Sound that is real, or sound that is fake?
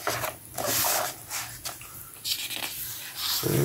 real